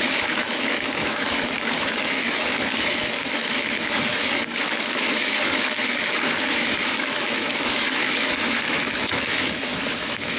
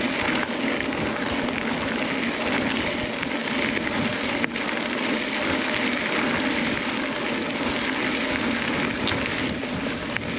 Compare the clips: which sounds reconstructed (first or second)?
first